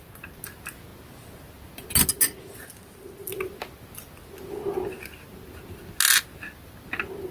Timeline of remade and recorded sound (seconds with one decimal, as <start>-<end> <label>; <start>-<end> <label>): 0.0-7.3 recorded